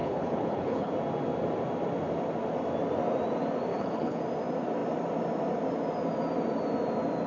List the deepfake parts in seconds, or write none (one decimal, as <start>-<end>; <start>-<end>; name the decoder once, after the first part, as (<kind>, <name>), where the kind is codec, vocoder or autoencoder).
0.0-0.9 (codec, HILCodec); 3.7-4.2